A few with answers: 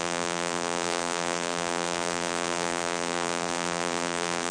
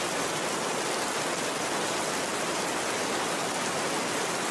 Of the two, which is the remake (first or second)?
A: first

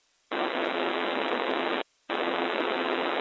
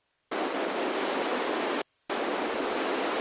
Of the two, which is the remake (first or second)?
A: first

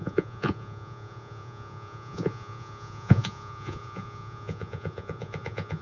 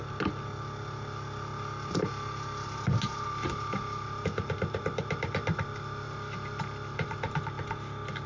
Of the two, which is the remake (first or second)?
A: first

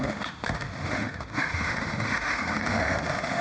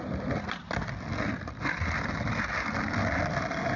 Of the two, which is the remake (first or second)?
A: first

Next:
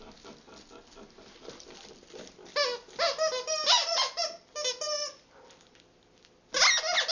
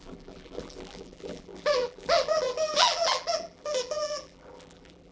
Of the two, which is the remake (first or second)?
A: second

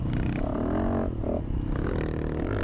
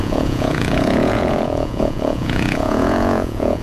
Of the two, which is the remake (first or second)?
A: second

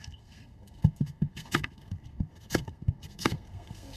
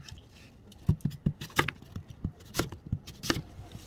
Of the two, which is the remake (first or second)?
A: first